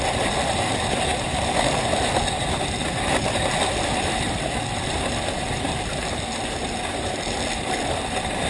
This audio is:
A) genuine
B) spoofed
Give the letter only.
A